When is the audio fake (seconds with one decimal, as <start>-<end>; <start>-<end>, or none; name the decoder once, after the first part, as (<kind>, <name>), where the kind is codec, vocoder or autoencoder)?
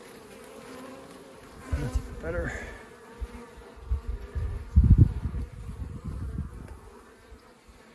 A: 0.9-4.5 (vocoder, BigVGAN v2)